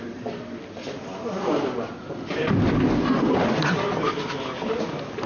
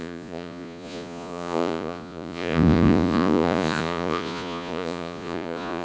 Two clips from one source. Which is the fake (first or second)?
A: second